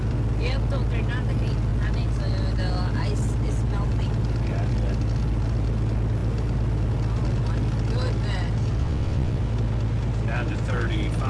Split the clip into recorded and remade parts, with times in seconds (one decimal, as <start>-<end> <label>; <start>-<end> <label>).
0.0-8.8 recorded; 8.8-9.4 remade; 9.4-11.3 recorded